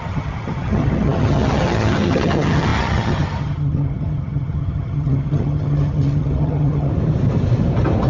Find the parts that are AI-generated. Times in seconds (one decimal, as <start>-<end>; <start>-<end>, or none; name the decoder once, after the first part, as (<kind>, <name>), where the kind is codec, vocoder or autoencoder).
0.0-6.9 (vocoder, HiFi-GAN)